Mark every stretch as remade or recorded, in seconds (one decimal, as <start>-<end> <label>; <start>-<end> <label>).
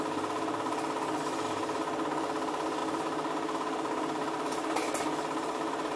0.0-6.0 recorded